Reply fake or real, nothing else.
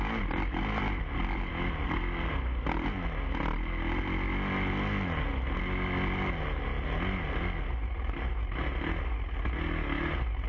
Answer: real